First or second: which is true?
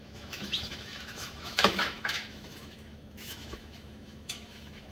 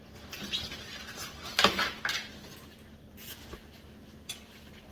second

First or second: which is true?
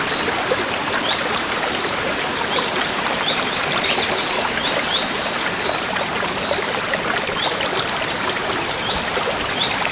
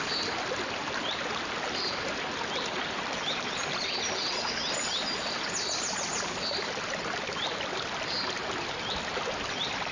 second